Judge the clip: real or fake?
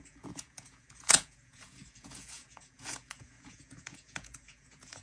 fake